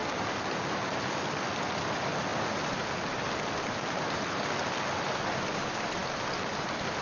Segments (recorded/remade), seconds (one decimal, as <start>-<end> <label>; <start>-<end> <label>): 0.0-7.0 recorded